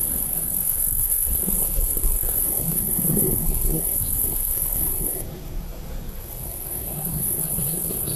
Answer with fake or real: fake